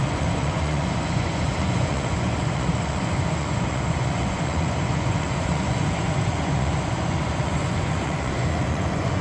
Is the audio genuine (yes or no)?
no